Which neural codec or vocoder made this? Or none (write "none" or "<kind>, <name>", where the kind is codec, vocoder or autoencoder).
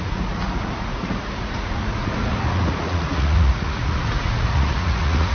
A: vocoder, Vocos